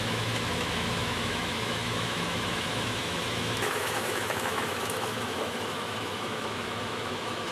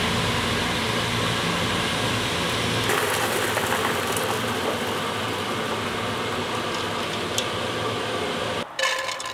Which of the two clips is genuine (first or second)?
second